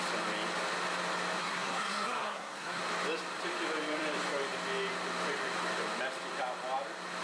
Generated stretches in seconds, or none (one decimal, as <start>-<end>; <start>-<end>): 1.4-2.8